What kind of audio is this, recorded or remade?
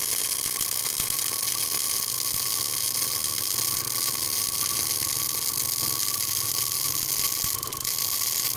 recorded